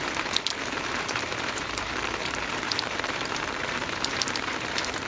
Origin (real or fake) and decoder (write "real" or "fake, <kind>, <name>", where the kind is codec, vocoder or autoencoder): fake, vocoder, BigVGAN v2